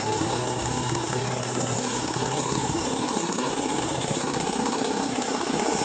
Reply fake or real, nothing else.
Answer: fake